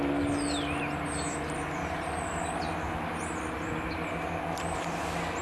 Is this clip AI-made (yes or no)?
no